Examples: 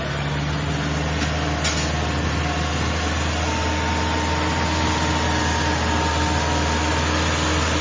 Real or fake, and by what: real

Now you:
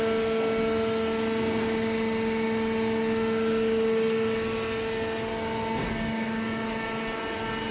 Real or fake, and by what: real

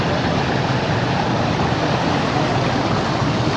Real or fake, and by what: real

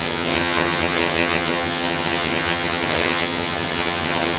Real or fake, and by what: fake, vocoder, HiFi-GAN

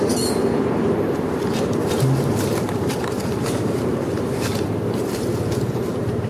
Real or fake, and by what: fake, vocoder, BigVGAN v2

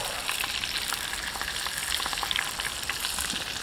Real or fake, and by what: real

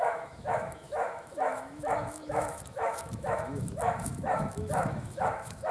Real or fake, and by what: fake, autoencoder, DAC-VAE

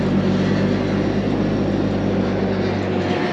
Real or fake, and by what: real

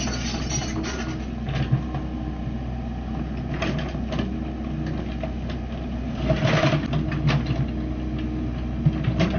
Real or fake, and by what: real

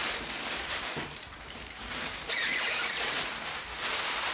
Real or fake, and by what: fake, vocoder, BigVGAN v2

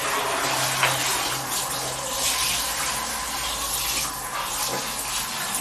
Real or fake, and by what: real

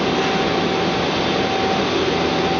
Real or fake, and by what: real